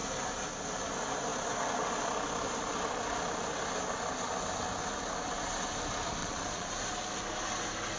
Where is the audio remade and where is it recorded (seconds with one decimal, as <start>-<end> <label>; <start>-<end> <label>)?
0.0-6.2 recorded; 6.2-6.7 remade; 6.7-8.0 recorded